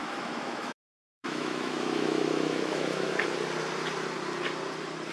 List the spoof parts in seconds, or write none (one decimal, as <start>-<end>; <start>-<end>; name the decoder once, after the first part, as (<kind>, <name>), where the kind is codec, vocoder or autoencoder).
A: 0.0-3.1 (autoencoder, DAC-VAE)